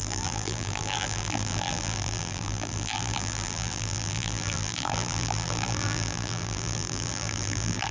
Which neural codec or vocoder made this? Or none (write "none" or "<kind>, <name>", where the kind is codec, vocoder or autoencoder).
vocoder, BigVGAN v2